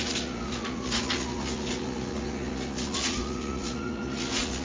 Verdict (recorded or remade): remade